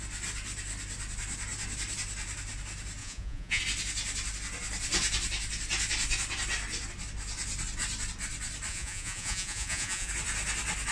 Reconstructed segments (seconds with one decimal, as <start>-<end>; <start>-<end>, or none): 3.0-3.6; 8.7-10.1